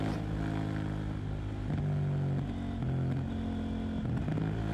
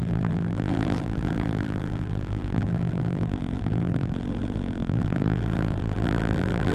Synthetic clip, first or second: second